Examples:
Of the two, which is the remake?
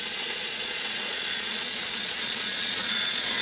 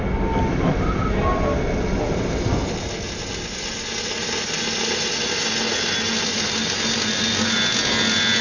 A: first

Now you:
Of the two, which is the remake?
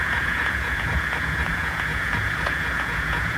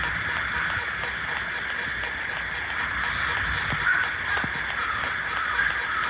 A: first